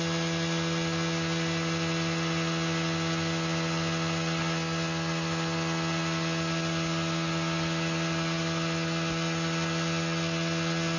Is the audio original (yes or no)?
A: yes